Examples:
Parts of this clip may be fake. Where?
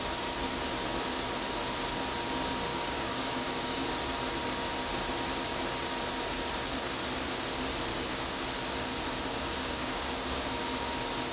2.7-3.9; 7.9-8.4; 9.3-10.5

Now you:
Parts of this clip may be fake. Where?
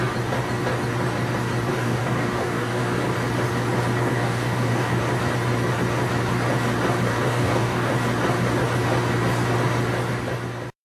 1.7-3.0; 4.0-5.0; 7.1-7.9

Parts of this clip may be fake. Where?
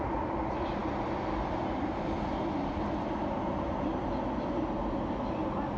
none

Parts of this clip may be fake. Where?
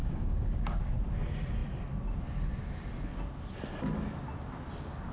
0.0-0.8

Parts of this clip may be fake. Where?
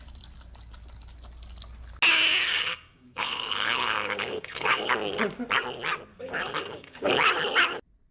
2.5-4.9; 6.1-7.1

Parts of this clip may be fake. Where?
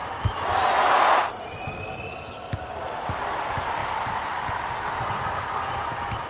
none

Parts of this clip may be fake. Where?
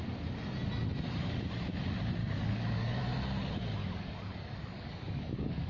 2.2-3.0; 3.8-5.7